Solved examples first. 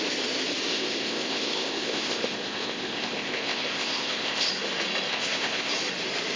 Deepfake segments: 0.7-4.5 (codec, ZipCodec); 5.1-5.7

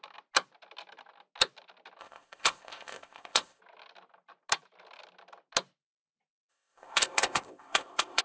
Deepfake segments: 2.0-3.6 (codec, ZipCodec); 6.5-8.2